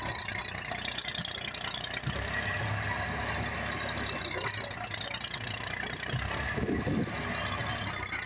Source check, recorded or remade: recorded